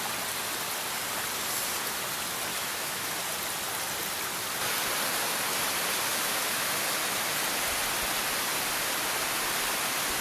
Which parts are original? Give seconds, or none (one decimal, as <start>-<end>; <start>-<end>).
0.0-2.5; 3.1-6.1; 6.8-10.2